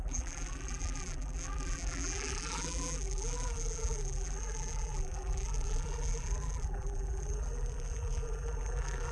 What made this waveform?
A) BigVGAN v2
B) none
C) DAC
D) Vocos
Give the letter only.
A